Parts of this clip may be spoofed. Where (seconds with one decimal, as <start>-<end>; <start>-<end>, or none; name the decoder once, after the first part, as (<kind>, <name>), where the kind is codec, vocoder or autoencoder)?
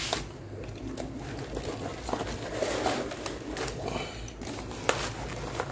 none